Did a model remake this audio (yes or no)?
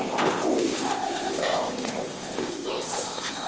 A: yes